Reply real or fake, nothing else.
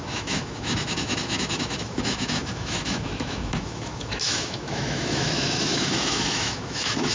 fake